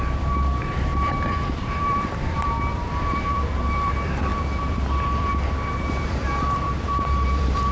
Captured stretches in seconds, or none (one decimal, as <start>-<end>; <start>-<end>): none